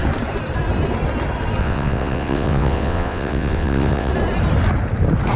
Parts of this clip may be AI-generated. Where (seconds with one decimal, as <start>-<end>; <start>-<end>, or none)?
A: 1.6-4.1